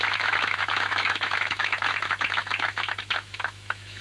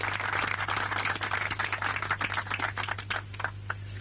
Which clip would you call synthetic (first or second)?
first